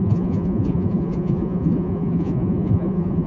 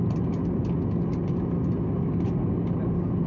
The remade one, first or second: first